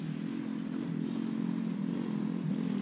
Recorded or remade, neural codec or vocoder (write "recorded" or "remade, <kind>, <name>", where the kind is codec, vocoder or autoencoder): recorded